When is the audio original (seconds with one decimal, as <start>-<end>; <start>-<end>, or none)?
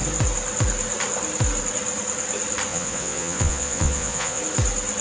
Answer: 0.0-2.7; 4.4-5.0